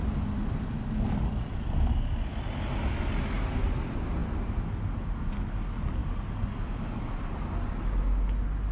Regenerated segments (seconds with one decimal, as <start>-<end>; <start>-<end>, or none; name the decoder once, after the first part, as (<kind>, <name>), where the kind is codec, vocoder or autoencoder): none